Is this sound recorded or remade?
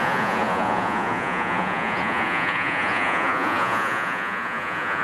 remade